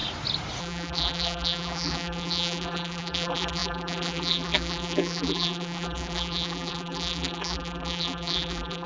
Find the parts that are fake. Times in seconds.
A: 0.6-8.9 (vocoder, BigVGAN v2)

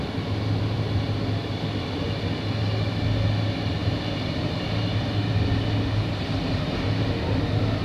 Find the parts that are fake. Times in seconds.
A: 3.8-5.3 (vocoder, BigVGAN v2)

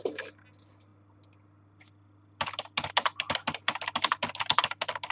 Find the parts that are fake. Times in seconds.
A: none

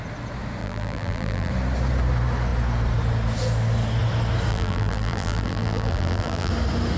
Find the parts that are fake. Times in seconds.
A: 0.6-1.5 (vocoder, BigVGAN v2); 4.5-6.5

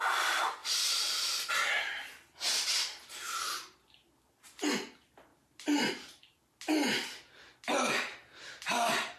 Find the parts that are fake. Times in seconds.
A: 5.3-6.4 (vocoder, BigVGAN v2)

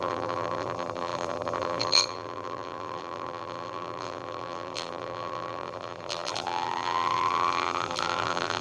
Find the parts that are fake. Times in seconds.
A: 0.0-8.6 (vocoder, BigVGAN v2)